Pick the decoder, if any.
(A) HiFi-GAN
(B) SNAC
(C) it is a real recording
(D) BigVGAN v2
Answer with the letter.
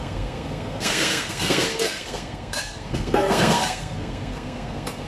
B